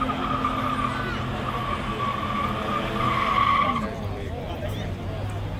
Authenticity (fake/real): real